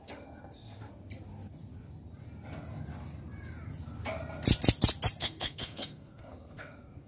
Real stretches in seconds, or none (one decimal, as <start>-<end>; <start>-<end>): 0.9-5.2